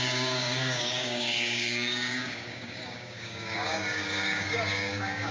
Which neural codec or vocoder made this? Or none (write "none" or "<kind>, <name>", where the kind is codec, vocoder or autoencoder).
codec, DAC